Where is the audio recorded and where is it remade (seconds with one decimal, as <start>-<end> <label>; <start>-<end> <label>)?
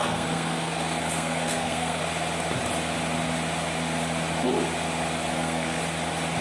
0.0-2.0 remade; 2.0-5.3 recorded; 5.3-5.8 remade; 5.8-6.4 recorded